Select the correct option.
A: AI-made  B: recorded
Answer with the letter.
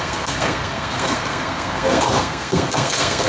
A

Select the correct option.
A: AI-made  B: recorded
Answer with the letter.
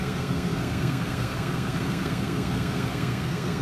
A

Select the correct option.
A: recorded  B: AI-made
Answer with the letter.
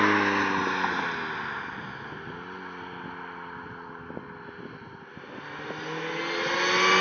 A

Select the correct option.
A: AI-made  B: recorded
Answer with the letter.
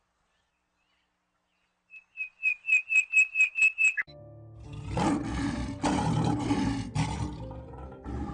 B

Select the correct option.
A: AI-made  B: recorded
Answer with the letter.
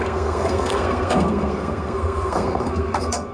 A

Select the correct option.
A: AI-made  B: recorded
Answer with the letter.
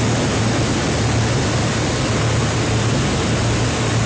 B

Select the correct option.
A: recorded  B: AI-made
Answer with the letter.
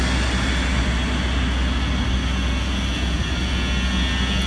A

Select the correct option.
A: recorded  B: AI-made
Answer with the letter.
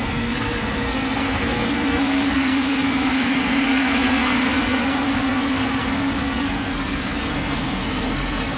B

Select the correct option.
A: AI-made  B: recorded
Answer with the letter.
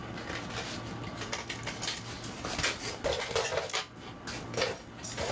B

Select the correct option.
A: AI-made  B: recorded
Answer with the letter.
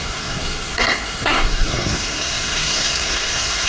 A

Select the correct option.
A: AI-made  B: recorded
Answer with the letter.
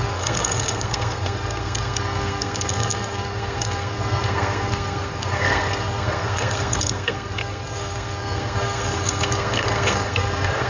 A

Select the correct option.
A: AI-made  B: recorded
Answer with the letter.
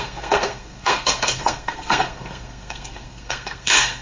A